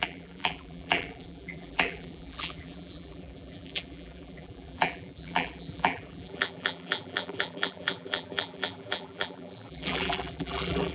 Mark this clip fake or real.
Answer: fake